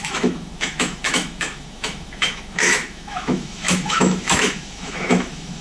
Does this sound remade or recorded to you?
remade